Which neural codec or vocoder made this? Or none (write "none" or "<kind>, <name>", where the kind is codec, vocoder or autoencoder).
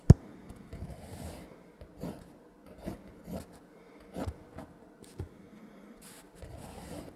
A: none